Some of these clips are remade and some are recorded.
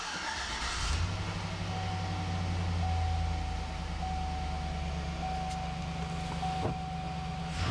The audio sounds recorded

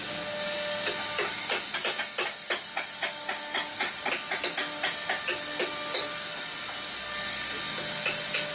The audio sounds recorded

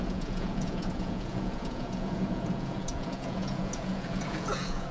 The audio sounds remade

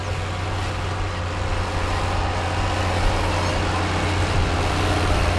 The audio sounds recorded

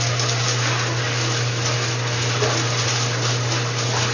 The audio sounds recorded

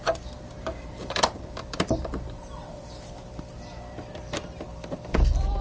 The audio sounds remade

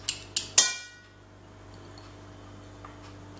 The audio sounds recorded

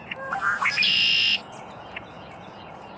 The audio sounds remade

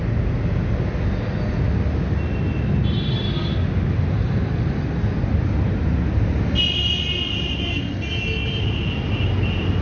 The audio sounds recorded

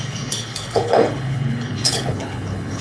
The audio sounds remade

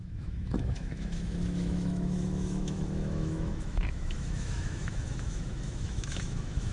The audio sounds remade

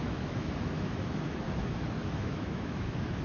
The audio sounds remade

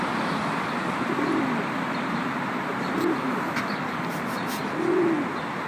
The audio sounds remade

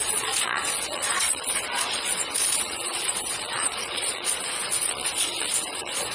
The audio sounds remade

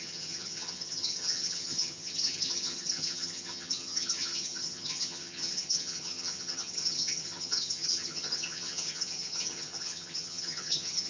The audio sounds remade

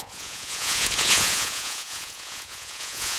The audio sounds remade